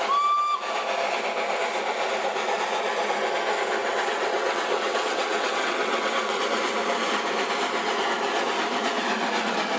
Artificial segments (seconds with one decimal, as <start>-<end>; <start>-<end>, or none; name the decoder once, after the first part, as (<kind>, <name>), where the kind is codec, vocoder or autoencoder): 3.8-6.4 (vocoder, WaveNeXt)